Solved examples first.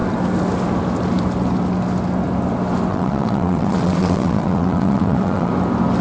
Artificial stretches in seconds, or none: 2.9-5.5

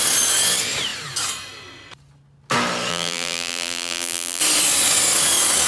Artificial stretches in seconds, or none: 2.9-4.4

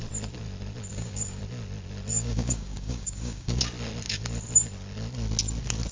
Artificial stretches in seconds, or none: 0.9-1.4; 2.1-3.6

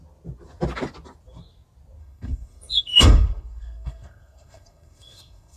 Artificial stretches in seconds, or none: 2.0-5.6